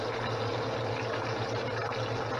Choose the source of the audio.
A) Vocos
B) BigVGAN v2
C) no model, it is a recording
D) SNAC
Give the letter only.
C